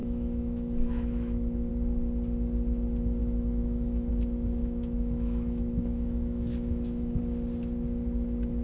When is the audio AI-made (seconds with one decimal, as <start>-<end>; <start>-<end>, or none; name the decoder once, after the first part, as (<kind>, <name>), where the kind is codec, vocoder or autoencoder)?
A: 0.0-1.7 (autoencoder, DAC-VAE); 3.2-4.1; 4.6-7.2